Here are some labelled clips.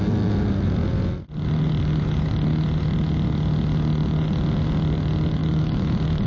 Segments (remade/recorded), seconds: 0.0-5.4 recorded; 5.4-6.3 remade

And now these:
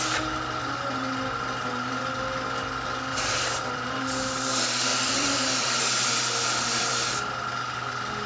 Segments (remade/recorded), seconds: 0.0-3.1 recorded; 3.1-4.0 remade; 4.0-4.9 recorded; 4.9-5.8 remade; 5.8-8.3 recorded